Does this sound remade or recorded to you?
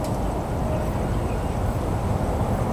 recorded